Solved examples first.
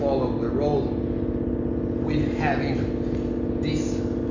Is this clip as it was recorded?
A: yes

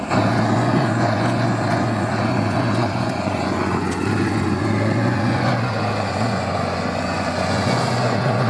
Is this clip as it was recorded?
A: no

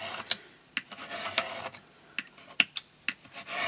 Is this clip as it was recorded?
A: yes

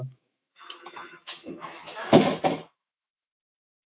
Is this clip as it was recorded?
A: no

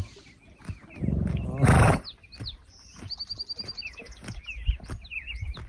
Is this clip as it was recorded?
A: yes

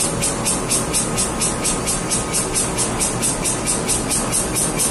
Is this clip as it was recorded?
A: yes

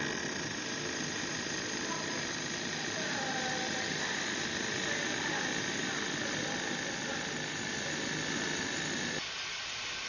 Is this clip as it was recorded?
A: yes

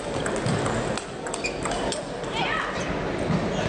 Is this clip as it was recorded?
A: yes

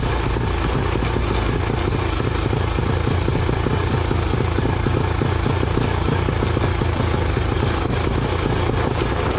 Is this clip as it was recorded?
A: yes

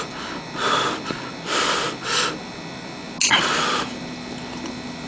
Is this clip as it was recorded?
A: yes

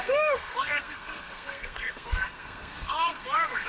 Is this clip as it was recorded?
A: no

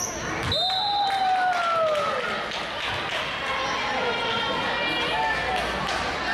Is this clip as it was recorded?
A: yes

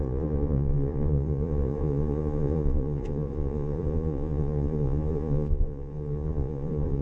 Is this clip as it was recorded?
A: no